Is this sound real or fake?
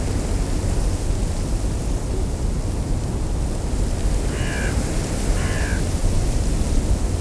real